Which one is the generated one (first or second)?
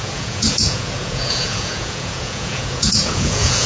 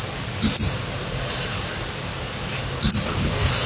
first